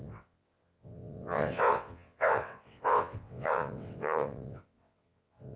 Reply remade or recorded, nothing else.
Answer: remade